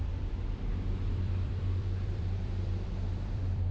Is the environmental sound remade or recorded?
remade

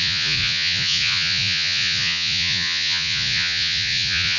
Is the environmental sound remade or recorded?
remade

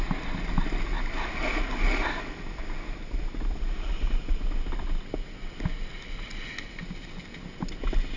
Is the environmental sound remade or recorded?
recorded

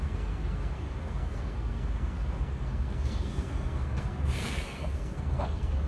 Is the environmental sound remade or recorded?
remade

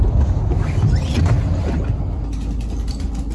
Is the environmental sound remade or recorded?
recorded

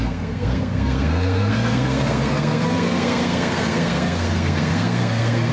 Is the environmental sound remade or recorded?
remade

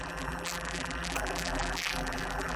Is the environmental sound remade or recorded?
remade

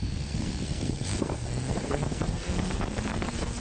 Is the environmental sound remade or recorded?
remade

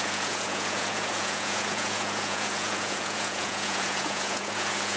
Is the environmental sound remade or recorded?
remade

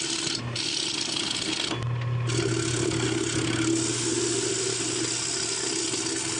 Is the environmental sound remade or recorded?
recorded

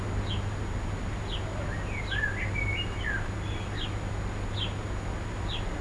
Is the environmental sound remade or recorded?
recorded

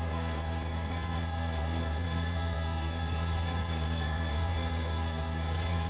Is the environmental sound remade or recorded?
remade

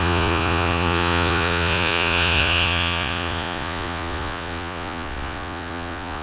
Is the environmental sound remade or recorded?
remade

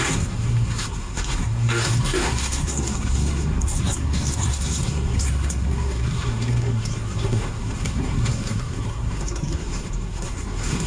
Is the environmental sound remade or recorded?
remade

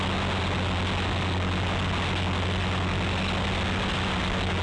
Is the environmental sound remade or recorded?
recorded